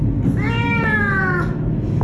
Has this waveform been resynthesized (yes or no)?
no